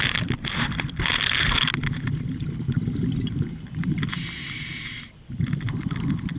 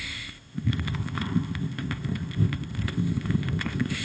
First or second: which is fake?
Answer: second